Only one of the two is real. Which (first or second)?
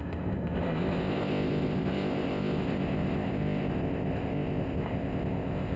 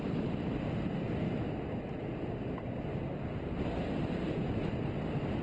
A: second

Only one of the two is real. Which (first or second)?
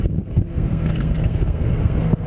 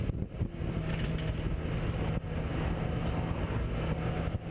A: second